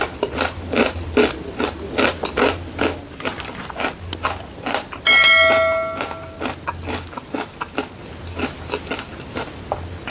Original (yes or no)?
yes